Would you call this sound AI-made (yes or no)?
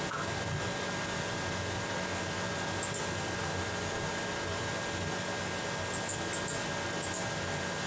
no